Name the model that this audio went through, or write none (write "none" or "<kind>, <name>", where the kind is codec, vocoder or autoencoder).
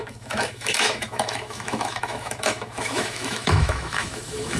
autoencoder, DAC-VAE